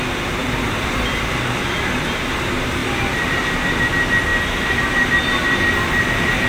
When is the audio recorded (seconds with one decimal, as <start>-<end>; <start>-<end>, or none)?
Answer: 0.0-0.4; 1.6-2.8; 3.9-4.3